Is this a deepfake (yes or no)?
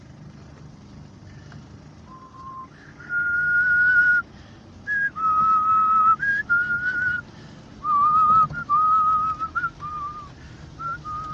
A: no